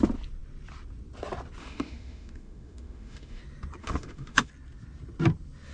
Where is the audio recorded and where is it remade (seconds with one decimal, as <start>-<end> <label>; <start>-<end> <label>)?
0.0-1.6 recorded; 1.6-3.4 remade; 3.4-3.8 recorded; 3.8-4.5 remade; 4.5-5.7 recorded

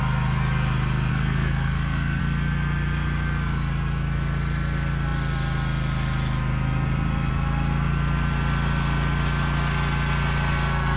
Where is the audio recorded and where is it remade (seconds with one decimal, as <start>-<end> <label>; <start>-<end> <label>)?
0.0-1.1 recorded; 1.1-2.2 remade; 2.2-11.0 recorded

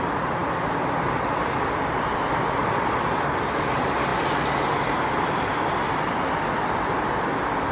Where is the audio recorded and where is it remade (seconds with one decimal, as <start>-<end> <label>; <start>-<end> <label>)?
0.0-7.7 recorded

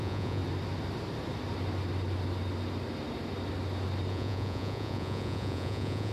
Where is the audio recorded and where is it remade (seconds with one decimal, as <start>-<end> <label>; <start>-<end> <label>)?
0.0-0.4 remade; 0.4-4.1 recorded; 4.1-6.1 remade

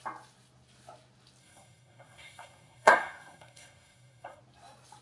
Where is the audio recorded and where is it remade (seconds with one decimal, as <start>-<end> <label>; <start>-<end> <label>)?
0.0-1.4 recorded; 1.4-4.4 remade; 4.4-5.0 recorded

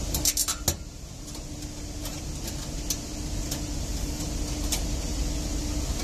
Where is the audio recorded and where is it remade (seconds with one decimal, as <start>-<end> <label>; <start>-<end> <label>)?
0.0-6.0 recorded

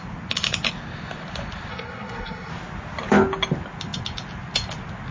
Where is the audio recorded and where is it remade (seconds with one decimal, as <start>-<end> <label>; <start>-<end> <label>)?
0.0-1.7 recorded; 1.7-2.5 remade; 2.5-5.1 recorded